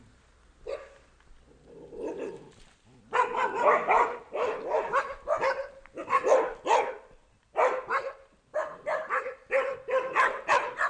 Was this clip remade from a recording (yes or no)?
no